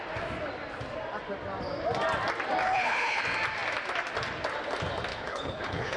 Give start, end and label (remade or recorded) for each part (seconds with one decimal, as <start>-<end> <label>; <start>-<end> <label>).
0.0-2.6 recorded; 2.6-3.2 remade; 3.2-5.1 recorded; 5.1-6.0 remade